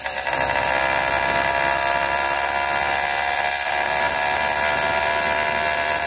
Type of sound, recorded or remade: recorded